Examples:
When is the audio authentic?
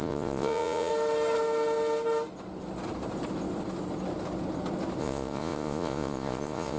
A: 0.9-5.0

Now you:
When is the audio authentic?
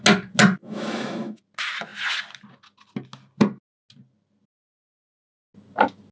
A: 0.0-0.6; 1.4-6.1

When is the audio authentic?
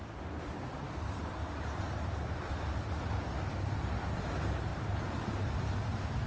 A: 0.0-6.3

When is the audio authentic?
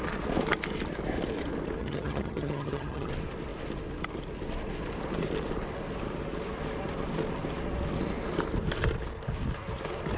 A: 0.0-1.8; 3.1-10.2